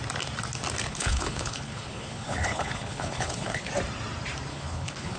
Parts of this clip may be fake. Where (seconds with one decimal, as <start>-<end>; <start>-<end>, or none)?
0.9-3.7; 4.5-5.2